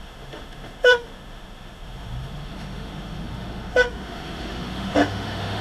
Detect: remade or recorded remade